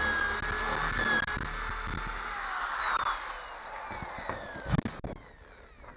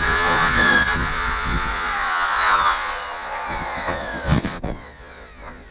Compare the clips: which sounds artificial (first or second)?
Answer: second